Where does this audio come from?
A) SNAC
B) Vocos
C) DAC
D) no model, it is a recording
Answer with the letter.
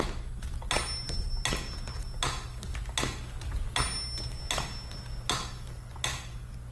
D